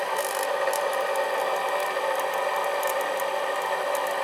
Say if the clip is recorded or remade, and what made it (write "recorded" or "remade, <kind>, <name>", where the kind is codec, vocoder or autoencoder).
recorded